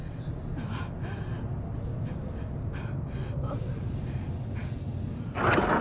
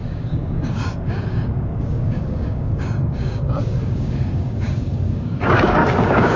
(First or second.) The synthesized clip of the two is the second